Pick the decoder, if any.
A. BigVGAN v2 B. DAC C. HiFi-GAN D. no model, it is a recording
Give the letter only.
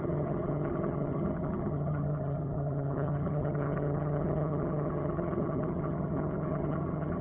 C